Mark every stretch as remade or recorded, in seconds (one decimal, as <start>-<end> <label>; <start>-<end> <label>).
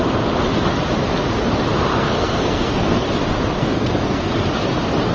0.0-1.9 recorded; 1.9-3.0 remade; 3.0-3.6 recorded; 3.6-4.3 remade; 4.3-5.1 recorded